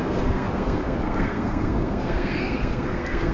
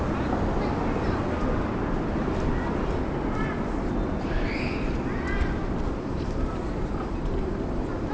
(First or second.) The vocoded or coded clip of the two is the first